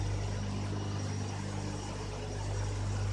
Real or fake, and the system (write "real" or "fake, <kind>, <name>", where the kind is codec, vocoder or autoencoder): real